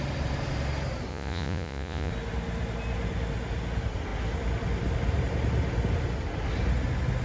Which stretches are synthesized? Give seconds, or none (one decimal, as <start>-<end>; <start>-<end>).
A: 1.1-2.1